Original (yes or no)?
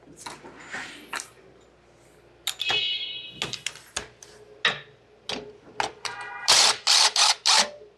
yes